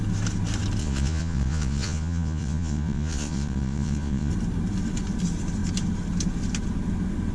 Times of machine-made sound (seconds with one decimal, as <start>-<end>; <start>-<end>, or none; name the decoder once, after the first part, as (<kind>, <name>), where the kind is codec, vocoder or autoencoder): 0.8-4.3 (vocoder, Vocos)